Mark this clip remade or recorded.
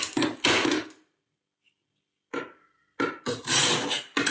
recorded